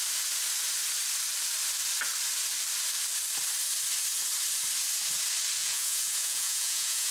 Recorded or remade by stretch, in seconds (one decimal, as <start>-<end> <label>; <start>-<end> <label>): 0.0-5.6 recorded; 5.6-7.1 remade